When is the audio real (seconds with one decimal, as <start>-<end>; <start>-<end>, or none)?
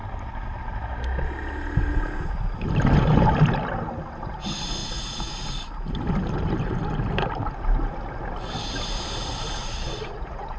0.0-4.8; 5.3-9.6